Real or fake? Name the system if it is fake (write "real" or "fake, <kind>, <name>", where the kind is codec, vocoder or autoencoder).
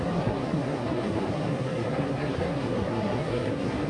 fake, codec, SNAC